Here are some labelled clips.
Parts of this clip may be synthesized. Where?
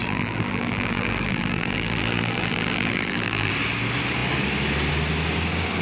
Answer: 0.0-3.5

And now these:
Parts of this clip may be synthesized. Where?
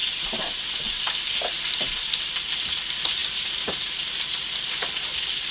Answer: 0.0-5.5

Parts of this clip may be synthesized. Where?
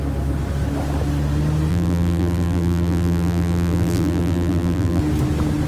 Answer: 1.7-5.0